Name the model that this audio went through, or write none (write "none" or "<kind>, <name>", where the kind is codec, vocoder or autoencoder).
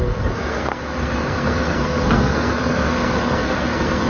codec, SNAC